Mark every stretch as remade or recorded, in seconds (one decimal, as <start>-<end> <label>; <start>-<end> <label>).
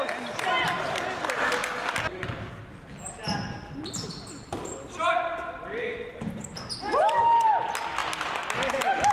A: 0.0-9.1 recorded